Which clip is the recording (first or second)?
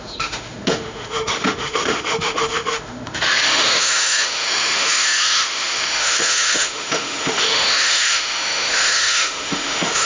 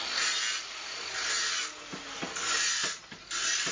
second